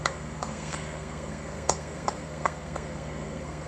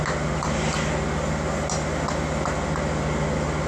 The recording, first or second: second